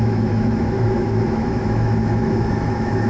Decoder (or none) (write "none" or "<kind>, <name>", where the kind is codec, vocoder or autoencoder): autoencoder, DAC-VAE